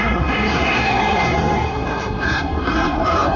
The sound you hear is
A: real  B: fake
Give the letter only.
B